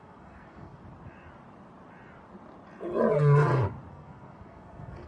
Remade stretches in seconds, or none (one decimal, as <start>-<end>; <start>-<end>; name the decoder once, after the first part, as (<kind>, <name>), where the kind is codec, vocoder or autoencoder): 0.0-0.8 (codec, SNAC); 3.9-5.1